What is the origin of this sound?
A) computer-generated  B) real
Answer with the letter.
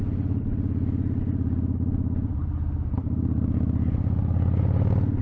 B